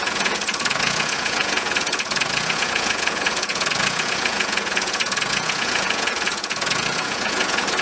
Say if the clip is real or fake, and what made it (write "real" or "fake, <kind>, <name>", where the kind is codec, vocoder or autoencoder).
fake, vocoder, Vocos